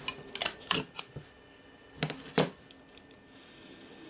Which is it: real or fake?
real